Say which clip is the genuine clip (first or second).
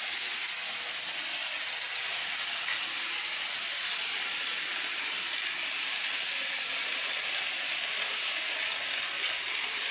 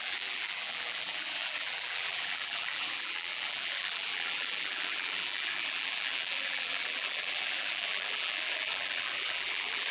first